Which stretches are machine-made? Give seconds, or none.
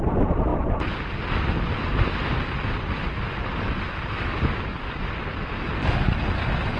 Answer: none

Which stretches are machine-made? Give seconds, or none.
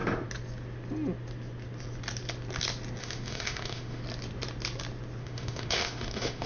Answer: 3.0-4.0 (autoencoder, DAC-VAE); 5.2-6.5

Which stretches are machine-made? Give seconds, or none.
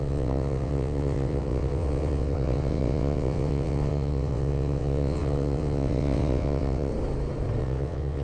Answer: 0.0-6.9 (vocoder, WaveNeXt); 7.6-8.2